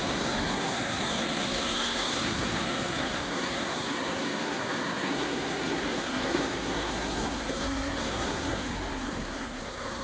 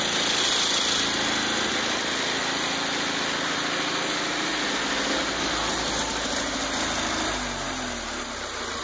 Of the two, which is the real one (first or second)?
second